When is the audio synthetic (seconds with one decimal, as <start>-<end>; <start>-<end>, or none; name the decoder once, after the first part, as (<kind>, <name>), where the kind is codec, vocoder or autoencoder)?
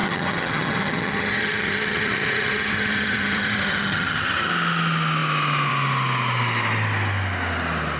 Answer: 0.0-4.5 (vocoder, HiFi-GAN)